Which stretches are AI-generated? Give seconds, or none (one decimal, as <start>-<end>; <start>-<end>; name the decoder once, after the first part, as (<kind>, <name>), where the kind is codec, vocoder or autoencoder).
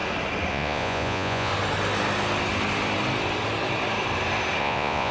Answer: 0.5-1.5 (vocoder, Vocos); 4.6-5.1